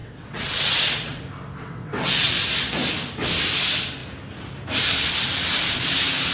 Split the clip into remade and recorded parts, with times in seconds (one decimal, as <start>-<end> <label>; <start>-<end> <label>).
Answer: 0.0-1.2 remade; 1.2-1.6 recorded; 1.6-2.4 remade; 2.4-6.3 recorded